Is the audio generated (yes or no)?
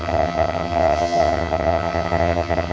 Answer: yes